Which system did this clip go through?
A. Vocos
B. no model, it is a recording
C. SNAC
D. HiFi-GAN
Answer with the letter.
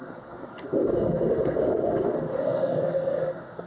C